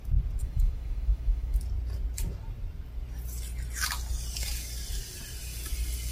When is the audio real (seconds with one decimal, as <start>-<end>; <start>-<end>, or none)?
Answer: 0.0-0.4; 1.6-6.1